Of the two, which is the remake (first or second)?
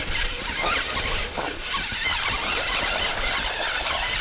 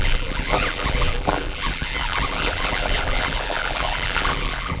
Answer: second